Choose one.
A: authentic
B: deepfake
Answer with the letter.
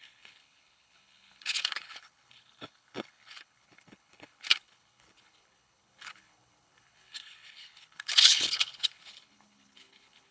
B